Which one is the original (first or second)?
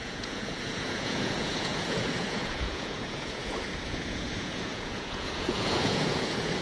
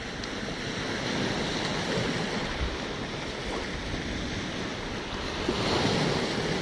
second